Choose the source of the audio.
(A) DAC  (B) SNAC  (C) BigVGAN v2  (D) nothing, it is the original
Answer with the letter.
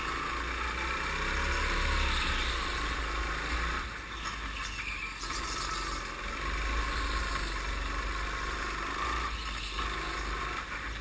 D